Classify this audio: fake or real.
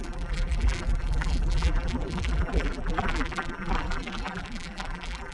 fake